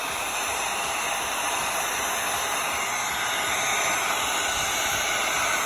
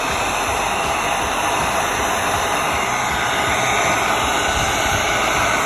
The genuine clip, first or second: first